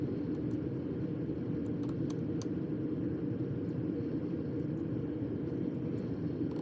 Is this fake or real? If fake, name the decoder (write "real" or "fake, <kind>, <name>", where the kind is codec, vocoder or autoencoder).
real